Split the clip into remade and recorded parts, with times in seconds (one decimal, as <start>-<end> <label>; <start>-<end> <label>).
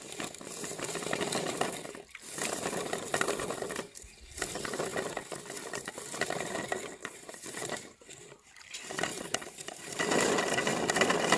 0.0-7.0 recorded; 7.0-7.7 remade; 7.7-9.1 recorded; 9.1-9.9 remade; 9.9-11.4 recorded